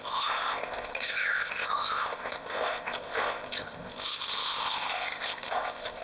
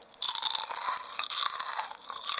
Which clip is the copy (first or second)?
first